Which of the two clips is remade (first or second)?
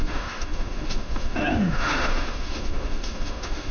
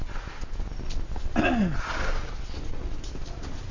first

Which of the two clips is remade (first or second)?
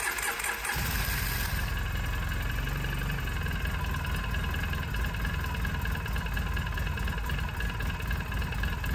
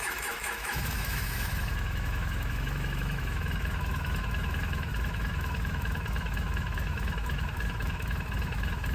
second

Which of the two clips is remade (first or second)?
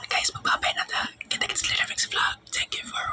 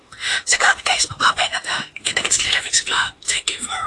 second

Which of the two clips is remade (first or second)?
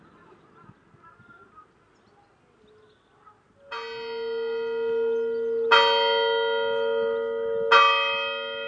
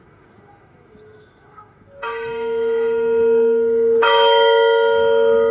second